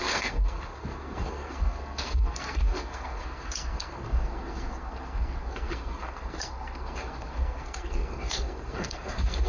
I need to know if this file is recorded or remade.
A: remade